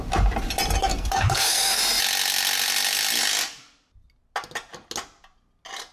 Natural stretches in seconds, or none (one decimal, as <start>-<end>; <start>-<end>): 0.0-0.8; 1.8-5.9

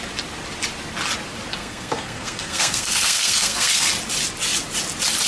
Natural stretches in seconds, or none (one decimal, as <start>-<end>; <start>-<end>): 0.0-1.6; 3.9-5.3

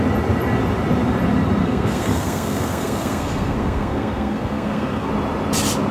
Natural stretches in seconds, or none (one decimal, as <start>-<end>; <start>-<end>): 0.0-1.6; 5.1-5.9

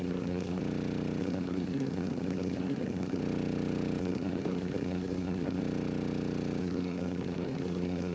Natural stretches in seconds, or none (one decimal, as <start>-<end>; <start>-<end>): 0.6-1.2; 3.2-4.0; 5.6-6.6

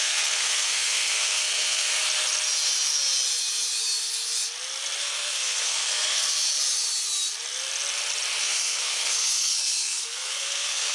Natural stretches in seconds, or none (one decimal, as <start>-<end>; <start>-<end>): 2.0-5.0; 6.2-8.4

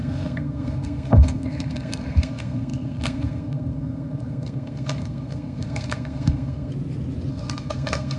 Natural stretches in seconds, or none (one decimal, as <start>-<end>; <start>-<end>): 6.7-7.3